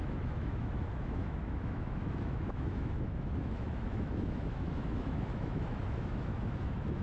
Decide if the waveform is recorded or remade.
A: remade